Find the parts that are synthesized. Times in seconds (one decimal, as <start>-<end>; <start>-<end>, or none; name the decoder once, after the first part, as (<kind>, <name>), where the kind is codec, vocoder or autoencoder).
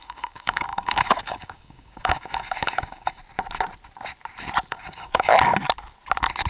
0.0-3.2 (codec, DAC); 4.7-5.3